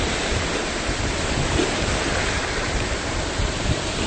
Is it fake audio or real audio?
fake